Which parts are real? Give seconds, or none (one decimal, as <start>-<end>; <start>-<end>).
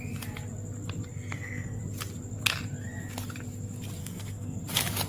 0.0-1.1; 1.8-4.0; 4.6-5.1